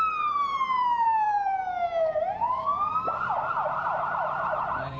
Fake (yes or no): yes